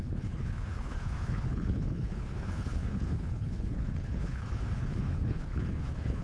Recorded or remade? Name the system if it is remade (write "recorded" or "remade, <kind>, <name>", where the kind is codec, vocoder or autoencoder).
remade, codec, HILCodec